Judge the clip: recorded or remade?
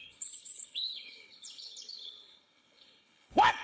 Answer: remade